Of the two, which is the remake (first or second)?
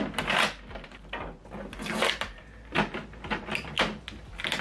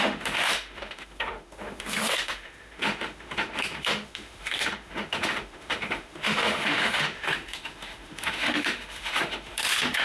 second